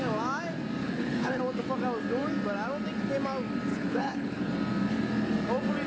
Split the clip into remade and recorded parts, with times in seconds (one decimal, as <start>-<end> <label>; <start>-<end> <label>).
0.0-0.8 recorded; 0.8-1.4 remade; 1.4-3.7 recorded; 3.7-4.5 remade; 4.5-5.9 recorded